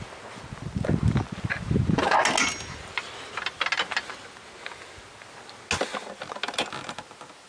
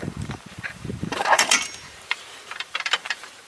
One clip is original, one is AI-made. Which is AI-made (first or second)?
second